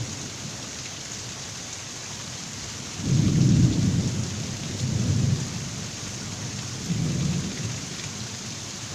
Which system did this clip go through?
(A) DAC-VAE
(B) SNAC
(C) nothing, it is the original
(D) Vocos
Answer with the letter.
C